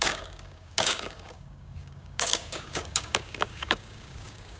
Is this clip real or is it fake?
fake